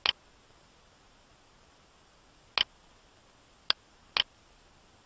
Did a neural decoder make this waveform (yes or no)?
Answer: no